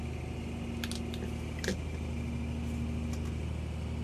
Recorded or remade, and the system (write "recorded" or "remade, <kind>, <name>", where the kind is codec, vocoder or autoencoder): recorded